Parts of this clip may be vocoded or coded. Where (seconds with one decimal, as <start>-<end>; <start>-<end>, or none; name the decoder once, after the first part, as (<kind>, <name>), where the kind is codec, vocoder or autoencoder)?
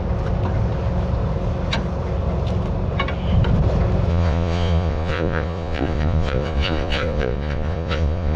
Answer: 4.1-8.4 (vocoder, Vocos)